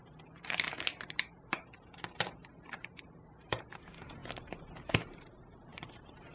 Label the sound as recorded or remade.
remade